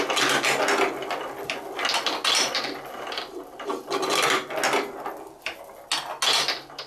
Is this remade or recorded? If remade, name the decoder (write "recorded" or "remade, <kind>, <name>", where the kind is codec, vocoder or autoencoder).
recorded